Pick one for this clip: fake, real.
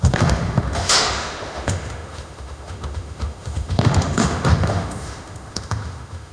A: fake